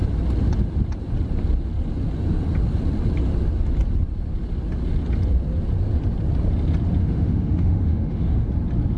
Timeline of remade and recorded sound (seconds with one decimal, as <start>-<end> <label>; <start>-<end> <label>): 0.0-7.0 recorded; 7.0-8.5 remade; 8.5-9.0 recorded